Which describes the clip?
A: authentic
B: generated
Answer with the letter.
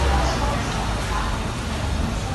A